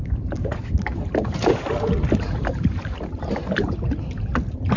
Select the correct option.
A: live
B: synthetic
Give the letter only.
A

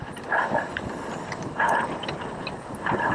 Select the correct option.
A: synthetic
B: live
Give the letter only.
B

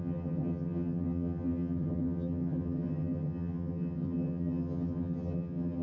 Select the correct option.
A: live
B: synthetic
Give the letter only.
B